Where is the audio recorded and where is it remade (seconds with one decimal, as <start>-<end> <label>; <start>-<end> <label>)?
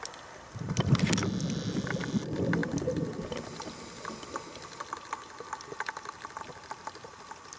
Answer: 0.0-7.6 recorded